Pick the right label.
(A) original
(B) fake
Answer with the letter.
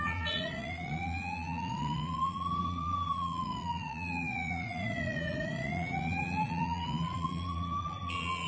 B